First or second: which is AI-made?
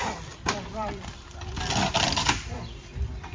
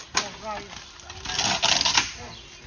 first